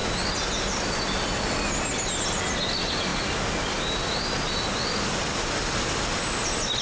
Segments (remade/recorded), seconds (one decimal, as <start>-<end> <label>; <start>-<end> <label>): 0.0-6.8 recorded